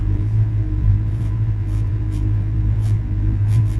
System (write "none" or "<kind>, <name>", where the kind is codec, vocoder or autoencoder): vocoder, BigVGAN v2